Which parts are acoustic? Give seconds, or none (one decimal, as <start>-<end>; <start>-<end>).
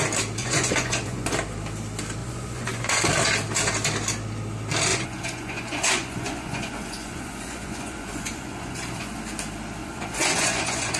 0.0-0.4; 1.3-2.2; 3.0-4.9; 9.2-9.8